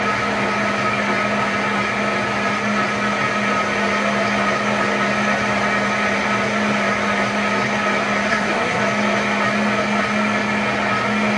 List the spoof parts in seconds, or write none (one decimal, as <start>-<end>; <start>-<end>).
8.3-8.8